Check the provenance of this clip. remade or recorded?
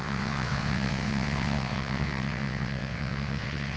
remade